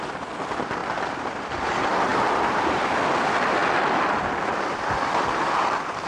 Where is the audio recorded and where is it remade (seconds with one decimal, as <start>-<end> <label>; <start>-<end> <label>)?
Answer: 0.0-2.1 recorded; 2.1-2.9 remade; 2.9-6.1 recorded